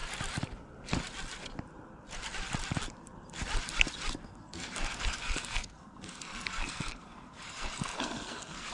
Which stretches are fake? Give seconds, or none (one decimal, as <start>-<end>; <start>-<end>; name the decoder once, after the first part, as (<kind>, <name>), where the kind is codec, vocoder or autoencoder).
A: 4.2-8.7 (codec, SNAC)